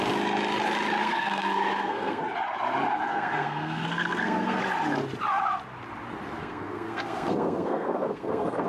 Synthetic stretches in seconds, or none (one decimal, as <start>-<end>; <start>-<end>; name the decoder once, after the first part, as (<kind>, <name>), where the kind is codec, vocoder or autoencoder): 1.0-2.2 (codec, SNAC); 3.1-4.6; 6.4-8.7